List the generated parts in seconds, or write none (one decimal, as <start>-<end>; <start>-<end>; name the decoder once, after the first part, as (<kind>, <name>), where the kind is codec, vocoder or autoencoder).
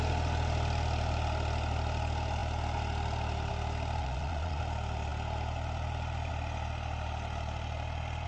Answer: 4.0-4.6 (vocoder, Vocos)